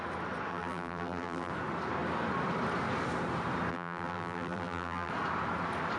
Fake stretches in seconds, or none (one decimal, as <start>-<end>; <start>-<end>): 0.5-1.5; 3.7-5.1